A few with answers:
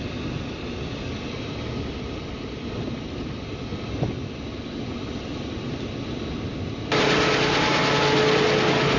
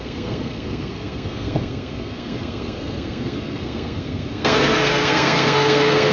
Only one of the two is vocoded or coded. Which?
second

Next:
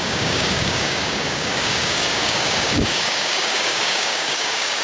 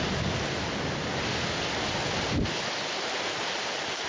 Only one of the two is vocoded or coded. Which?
first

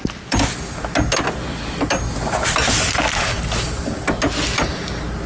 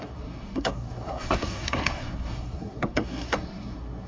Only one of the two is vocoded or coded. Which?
second